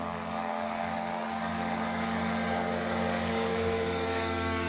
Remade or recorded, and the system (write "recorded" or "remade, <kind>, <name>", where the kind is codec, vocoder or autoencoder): remade, codec, DAC